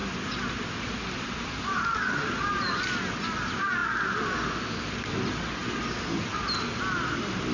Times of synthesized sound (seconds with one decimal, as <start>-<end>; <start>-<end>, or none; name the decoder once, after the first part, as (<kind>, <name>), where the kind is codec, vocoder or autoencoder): none